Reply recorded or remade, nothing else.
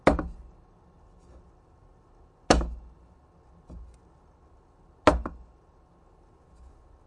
recorded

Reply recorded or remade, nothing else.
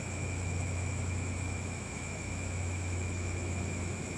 remade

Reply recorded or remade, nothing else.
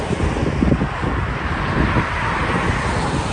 recorded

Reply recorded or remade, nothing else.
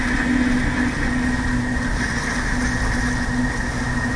recorded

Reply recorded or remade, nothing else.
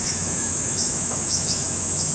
remade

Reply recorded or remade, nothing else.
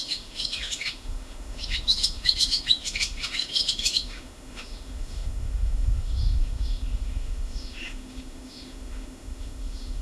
remade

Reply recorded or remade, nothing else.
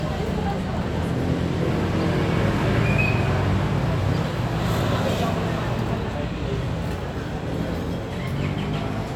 recorded